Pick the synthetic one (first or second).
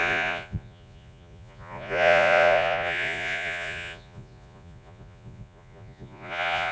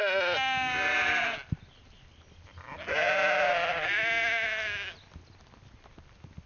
first